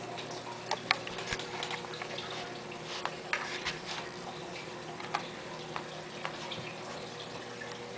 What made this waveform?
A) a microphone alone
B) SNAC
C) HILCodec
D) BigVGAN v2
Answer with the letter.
A